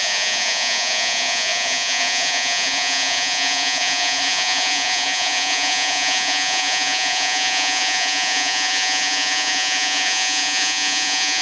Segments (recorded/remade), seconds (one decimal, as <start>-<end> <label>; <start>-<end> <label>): 0.0-11.4 remade